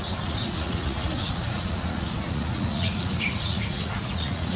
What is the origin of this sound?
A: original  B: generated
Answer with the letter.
B